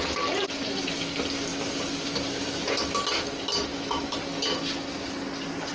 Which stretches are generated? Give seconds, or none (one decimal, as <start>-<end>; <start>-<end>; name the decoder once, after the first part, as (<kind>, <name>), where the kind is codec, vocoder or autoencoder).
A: 3.7-4.2 (autoencoder, DAC-VAE)